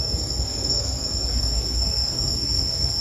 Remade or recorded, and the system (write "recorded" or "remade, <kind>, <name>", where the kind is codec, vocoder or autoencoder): remade, codec, SNAC